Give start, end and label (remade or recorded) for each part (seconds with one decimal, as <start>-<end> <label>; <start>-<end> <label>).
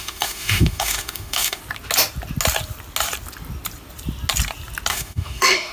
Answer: 0.0-1.6 remade; 1.6-4.9 recorded; 4.9-5.7 remade